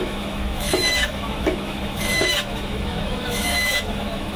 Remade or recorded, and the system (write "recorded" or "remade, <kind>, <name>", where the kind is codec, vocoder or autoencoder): remade, autoencoder, DAC-VAE